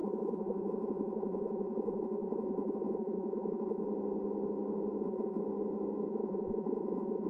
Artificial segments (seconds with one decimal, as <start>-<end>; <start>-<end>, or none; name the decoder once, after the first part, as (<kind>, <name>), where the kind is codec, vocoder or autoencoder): 0.0-3.8 (vocoder, Vocos); 5.0-5.4; 6.1-7.3